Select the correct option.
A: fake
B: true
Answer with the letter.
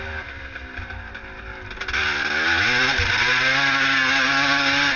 B